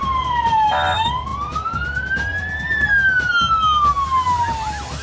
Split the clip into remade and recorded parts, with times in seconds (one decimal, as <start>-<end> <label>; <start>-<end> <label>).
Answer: 0.0-5.0 recorded